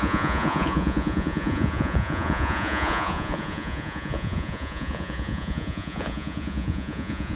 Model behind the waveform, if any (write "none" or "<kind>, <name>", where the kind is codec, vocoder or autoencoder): vocoder, Vocos